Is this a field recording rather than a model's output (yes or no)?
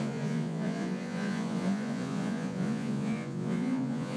no